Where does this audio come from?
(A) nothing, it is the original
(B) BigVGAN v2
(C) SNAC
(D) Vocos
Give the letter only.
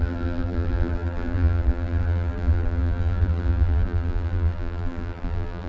B